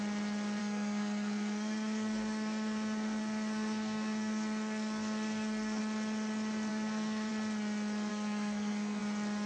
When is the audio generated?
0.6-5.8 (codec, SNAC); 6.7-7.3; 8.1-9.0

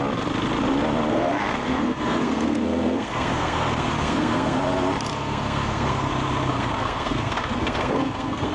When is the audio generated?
1.1-4.6 (codec, SNAC); 5.1-6.1; 6.5-8.5

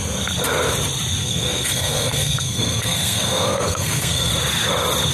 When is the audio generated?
1.2-4.3 (codec, SNAC)

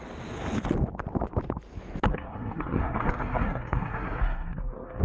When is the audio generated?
2.1-5.0 (codec, SNAC)

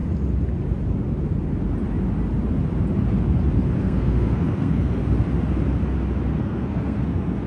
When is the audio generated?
3.8-5.0 (codec, SNAC); 6.4-7.5